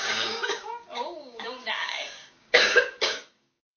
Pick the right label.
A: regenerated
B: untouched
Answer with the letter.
A